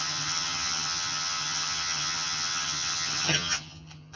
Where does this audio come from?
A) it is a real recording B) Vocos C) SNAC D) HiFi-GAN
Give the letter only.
D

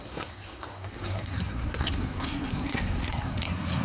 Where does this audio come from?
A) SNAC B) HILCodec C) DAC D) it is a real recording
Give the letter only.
A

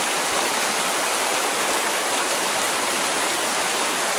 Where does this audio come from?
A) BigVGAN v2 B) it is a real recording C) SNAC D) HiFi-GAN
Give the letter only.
B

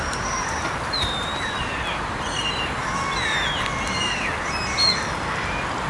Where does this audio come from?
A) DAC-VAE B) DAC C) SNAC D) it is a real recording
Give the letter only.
D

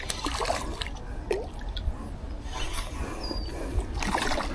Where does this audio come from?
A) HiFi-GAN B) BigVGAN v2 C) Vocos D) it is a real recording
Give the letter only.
D